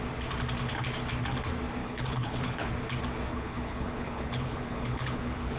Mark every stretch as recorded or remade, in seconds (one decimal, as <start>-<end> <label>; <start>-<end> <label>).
0.0-1.8 recorded; 1.8-2.7 remade; 2.7-3.3 recorded; 3.3-5.6 remade

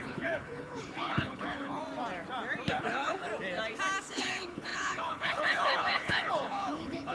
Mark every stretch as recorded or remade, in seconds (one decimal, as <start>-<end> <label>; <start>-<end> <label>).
0.0-1.8 remade; 1.8-2.7 recorded; 2.7-3.3 remade; 3.3-4.0 recorded; 4.0-7.1 remade

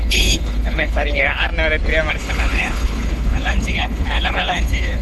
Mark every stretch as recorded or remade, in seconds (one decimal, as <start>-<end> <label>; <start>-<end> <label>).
0.0-1.5 remade; 1.5-2.1 recorded; 2.1-5.0 remade